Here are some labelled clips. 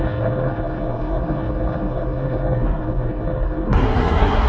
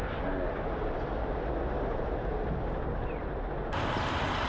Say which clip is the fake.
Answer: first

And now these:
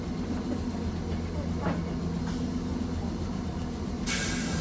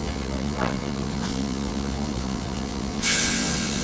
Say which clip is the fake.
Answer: second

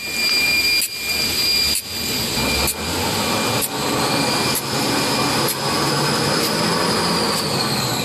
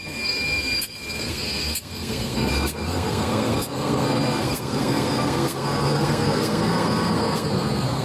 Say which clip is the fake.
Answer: second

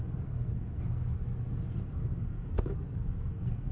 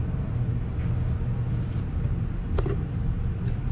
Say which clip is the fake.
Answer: first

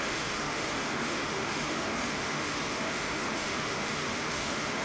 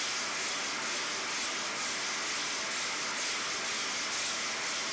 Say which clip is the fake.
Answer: first